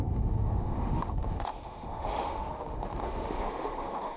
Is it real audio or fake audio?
fake